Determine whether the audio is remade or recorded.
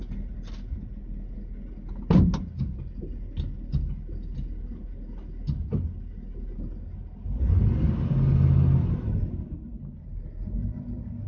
recorded